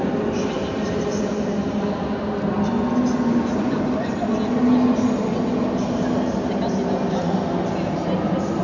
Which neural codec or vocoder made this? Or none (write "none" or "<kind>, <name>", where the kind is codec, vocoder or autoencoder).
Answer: none